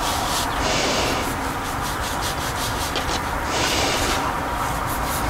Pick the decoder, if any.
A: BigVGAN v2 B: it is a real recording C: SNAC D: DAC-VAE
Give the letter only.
A